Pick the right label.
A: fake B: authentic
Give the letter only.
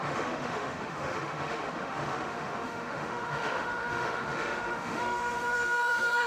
A